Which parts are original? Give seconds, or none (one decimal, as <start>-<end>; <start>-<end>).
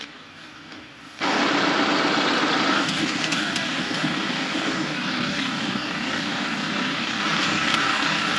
1.4-2.7